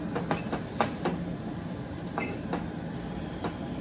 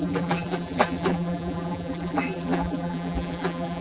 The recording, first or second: first